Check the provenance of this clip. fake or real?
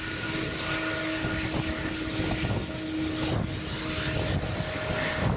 real